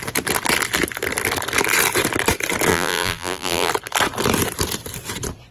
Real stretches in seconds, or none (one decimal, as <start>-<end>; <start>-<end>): 0.0-2.7; 3.7-5.5